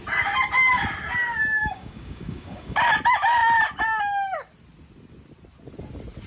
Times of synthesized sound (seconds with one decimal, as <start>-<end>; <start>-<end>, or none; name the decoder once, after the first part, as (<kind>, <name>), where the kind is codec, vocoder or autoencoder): 1.6-2.8 (codec, DAC)